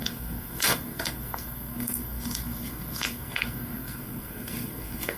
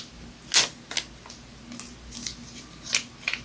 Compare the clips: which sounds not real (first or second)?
first